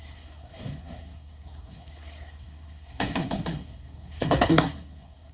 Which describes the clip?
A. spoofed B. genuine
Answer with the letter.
A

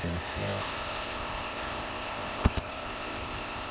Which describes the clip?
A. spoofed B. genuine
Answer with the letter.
A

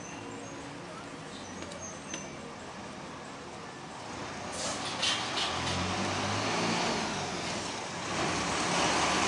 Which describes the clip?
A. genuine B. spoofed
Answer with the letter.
A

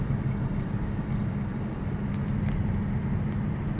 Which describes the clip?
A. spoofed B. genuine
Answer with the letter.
B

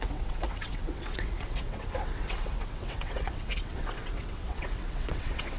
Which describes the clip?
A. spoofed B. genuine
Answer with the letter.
A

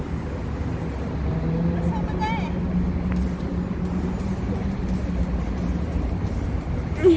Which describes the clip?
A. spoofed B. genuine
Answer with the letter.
B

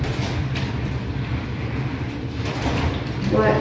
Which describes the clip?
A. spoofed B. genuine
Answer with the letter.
A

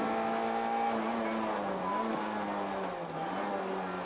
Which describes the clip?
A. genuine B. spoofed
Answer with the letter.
A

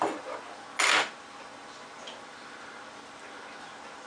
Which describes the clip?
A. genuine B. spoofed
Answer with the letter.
A